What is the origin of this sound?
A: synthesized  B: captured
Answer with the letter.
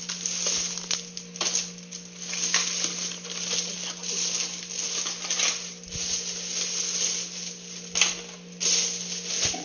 B